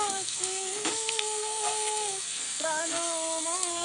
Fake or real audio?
fake